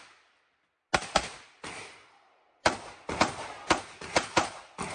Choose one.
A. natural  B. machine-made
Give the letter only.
A